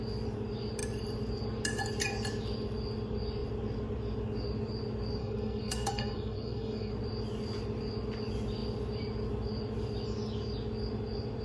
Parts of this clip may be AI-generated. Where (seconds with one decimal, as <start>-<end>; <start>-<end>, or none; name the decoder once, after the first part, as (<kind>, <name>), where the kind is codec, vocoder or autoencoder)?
5.2-6.9 (codec, SNAC)